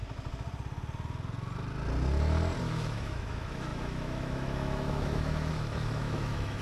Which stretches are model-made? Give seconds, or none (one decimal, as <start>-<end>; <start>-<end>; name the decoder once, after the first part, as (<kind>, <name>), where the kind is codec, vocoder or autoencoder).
2.6-6.6 (autoencoder, DAC-VAE)